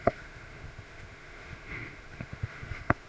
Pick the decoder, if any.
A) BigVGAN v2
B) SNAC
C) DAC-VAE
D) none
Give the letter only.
C